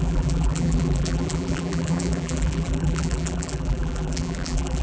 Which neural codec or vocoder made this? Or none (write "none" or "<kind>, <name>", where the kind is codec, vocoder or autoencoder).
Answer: vocoder, BigVGAN v2